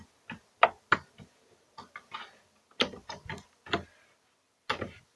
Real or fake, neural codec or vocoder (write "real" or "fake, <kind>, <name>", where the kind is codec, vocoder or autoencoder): real